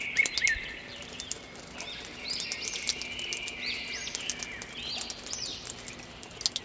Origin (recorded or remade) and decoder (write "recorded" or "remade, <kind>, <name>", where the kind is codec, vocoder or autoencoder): recorded